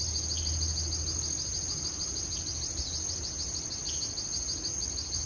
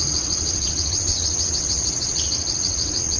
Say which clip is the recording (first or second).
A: first